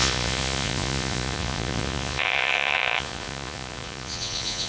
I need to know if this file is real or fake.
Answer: fake